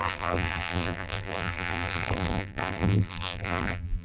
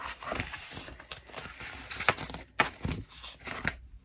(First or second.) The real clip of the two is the second